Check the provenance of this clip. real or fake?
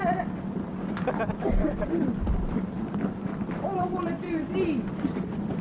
real